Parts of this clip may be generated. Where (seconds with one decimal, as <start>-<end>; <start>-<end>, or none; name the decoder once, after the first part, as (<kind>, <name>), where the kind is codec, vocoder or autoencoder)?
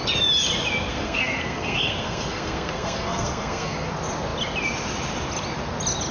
0.9-3.9 (codec, SNAC)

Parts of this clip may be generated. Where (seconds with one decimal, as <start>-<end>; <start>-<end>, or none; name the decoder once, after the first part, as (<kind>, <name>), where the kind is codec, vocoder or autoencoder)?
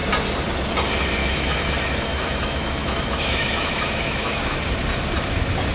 1.2-4.6 (autoencoder, DAC-VAE)